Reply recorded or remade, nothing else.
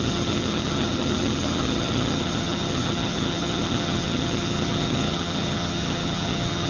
remade